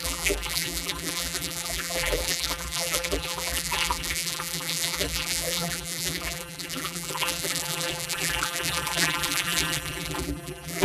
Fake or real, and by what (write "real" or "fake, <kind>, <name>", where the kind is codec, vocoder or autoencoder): fake, vocoder, BigVGAN v2